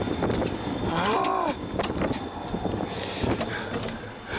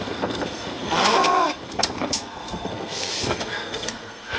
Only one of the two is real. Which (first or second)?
first